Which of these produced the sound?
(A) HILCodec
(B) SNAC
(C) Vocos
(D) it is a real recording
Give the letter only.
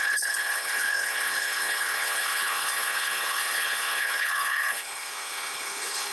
A